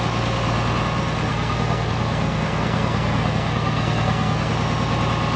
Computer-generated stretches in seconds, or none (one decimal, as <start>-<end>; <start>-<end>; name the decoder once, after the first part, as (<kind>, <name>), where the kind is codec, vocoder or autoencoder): 1.3-4.5 (codec, SNAC)